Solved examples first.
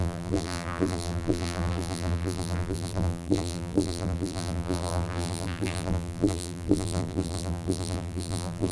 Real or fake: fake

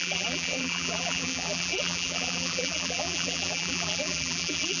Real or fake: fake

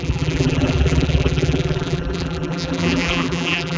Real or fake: fake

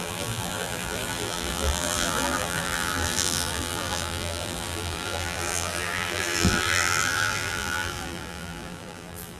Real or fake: fake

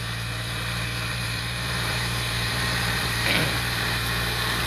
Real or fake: fake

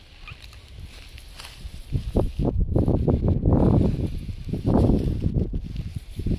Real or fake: fake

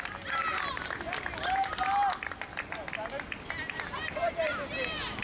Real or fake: real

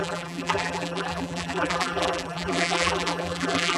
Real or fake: fake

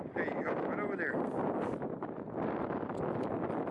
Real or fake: real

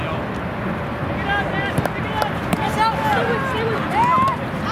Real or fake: real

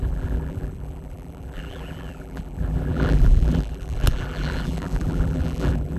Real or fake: fake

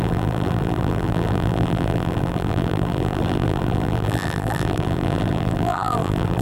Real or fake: fake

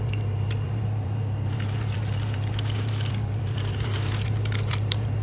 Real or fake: fake